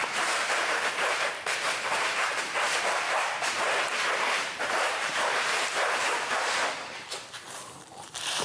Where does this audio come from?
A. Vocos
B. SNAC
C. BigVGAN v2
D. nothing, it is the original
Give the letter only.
C